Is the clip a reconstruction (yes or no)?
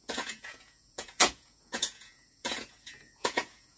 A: yes